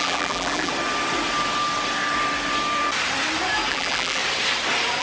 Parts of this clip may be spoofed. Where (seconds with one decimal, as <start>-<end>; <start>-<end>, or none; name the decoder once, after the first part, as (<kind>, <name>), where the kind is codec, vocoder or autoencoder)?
0.0-0.7 (vocoder, BigVGAN v2); 3.7-4.2